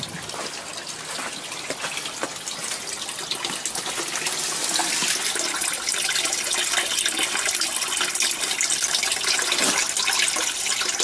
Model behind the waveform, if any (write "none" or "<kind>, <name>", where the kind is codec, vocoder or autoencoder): none